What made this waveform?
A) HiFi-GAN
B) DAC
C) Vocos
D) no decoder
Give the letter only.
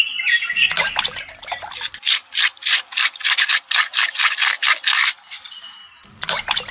D